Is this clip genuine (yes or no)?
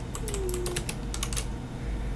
yes